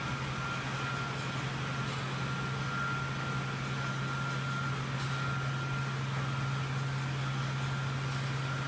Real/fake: real